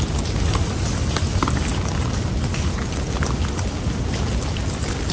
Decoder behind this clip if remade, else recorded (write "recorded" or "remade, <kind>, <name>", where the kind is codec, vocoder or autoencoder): recorded